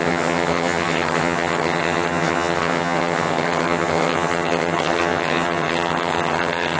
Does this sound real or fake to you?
fake